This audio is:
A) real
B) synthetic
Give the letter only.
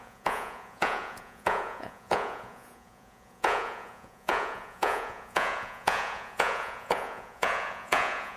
B